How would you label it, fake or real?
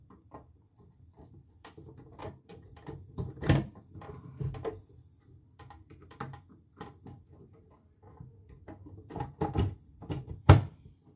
fake